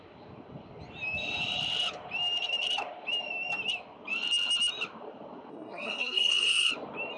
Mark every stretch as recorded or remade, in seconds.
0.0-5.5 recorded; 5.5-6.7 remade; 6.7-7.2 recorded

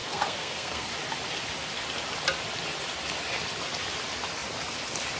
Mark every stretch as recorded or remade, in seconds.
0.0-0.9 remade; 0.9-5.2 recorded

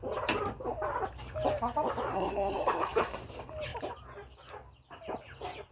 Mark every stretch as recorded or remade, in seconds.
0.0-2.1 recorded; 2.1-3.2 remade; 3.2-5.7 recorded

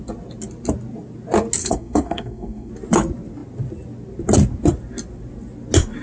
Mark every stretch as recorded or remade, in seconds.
0.0-1.6 recorded; 1.6-2.7 remade; 2.7-6.0 recorded

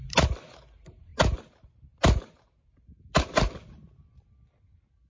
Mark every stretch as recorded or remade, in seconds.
0.0-5.1 recorded

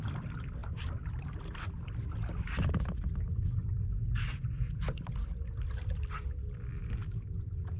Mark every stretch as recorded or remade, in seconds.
0.0-7.8 recorded

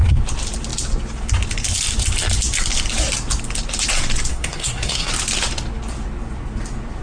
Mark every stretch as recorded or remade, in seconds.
0.0-4.3 recorded; 4.3-5.1 remade; 5.1-7.0 recorded

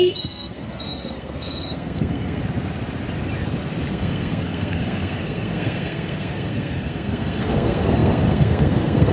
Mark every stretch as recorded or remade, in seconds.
0.0-2.4 remade; 2.4-3.9 recorded; 3.9-9.1 remade